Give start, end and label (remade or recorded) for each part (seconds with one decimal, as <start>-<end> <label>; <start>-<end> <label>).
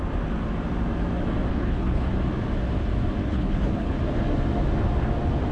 0.0-1.5 recorded; 1.5-2.1 remade; 2.1-3.2 recorded; 3.2-4.0 remade; 4.0-5.5 recorded